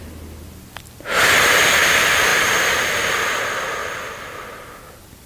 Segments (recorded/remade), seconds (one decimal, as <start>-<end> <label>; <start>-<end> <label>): 0.0-5.3 recorded